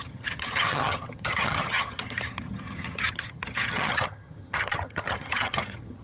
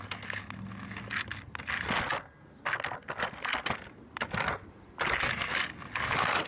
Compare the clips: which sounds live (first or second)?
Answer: second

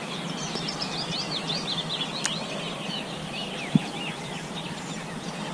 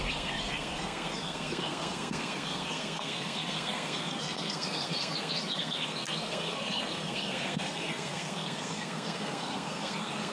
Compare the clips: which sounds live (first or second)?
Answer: first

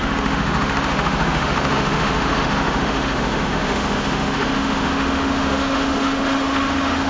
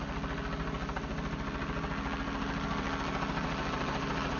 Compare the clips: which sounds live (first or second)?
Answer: second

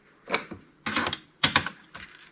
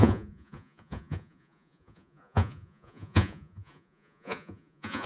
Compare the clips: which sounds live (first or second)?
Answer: first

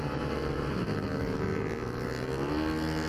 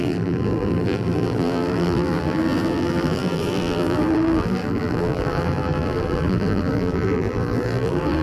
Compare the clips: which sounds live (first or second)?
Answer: first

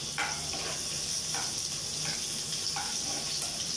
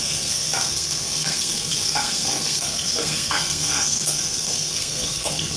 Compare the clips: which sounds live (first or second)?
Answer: first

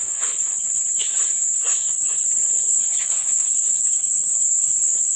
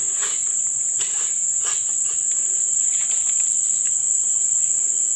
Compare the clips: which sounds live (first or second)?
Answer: second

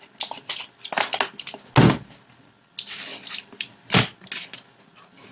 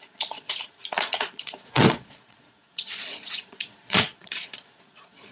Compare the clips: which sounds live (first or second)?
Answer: first